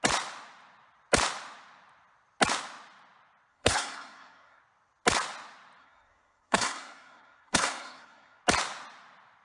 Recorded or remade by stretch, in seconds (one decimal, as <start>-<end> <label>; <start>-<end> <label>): 0.0-3.5 recorded; 3.5-4.6 remade; 4.6-5.8 recorded; 5.8-8.4 remade; 8.4-9.4 recorded

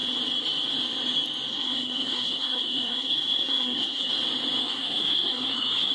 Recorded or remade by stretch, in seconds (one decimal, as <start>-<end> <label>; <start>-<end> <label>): 0.0-1.5 recorded; 1.5-4.1 remade; 4.1-4.6 recorded; 4.6-5.9 remade

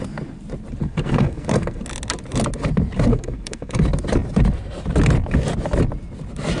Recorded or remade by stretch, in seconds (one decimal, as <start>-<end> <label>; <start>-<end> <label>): 0.0-0.8 recorded; 0.8-1.8 remade; 1.8-3.1 recorded; 3.1-3.8 remade; 3.8-6.6 recorded

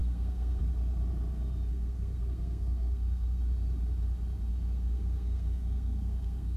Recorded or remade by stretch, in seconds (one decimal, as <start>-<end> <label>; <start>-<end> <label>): 0.0-0.6 remade; 0.6-1.7 recorded; 1.7-3.4 remade; 3.4-4.5 recorded; 4.5-6.6 remade

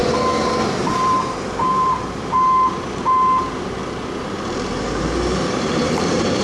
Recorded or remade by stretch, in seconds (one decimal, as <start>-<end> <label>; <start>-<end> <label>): 0.0-0.9 recorded; 0.9-3.8 remade; 3.8-4.4 recorded; 4.4-6.4 remade

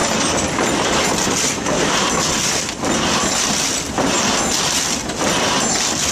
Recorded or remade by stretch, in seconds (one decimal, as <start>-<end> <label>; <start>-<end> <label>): 0.0-3.7 remade; 3.7-6.1 recorded